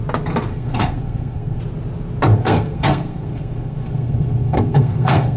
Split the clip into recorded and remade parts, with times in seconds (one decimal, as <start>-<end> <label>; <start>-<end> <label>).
0.0-0.5 recorded; 0.5-1.6 remade; 1.6-2.3 recorded; 2.3-5.4 remade

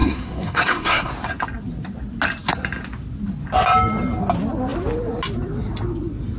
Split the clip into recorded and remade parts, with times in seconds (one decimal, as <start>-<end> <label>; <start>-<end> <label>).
0.0-1.1 remade; 1.1-6.4 recorded

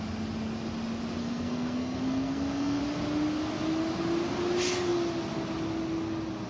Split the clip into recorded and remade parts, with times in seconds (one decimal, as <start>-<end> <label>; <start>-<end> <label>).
0.0-1.2 recorded; 1.2-2.8 remade; 2.8-6.5 recorded